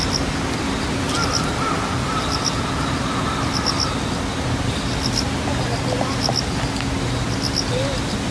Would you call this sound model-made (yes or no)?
no